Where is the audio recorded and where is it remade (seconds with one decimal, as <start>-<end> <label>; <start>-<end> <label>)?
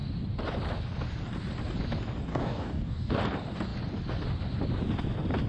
0.0-2.3 recorded; 2.3-3.2 remade; 3.2-5.5 recorded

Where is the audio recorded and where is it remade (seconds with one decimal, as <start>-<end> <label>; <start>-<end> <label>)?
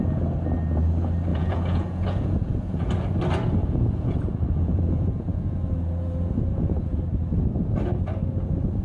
0.0-1.3 recorded; 1.3-2.9 remade; 2.9-3.6 recorded; 3.6-7.0 remade; 7.0-8.8 recorded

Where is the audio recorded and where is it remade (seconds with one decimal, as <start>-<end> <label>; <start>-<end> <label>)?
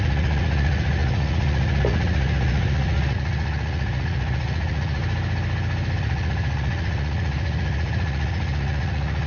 0.0-5.0 remade; 5.0-6.0 recorded; 6.0-9.3 remade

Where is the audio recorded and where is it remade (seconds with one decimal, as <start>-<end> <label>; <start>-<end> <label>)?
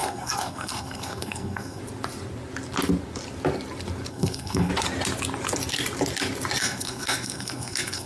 0.0-1.8 remade; 1.8-4.1 recorded; 4.1-4.7 remade; 4.7-6.6 recorded; 6.6-8.1 remade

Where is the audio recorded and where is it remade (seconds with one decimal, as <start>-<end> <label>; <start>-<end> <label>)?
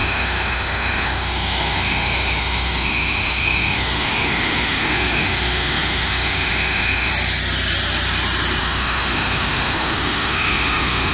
0.0-7.1 remade; 7.1-8.6 recorded; 8.6-11.1 remade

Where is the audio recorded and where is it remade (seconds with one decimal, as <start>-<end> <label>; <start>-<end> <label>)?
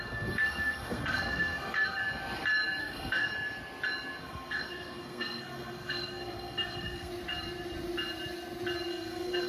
0.0-2.0 remade; 2.0-2.8 recorded; 2.8-3.3 remade; 3.3-4.2 recorded; 4.2-7.1 remade; 7.1-8.9 recorded; 8.9-9.5 remade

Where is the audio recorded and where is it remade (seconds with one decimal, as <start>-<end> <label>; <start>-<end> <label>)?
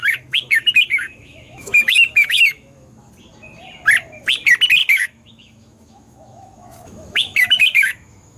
0.0-3.1 remade; 3.1-4.8 recorded; 4.8-8.4 remade